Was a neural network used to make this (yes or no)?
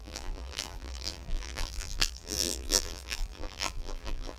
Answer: yes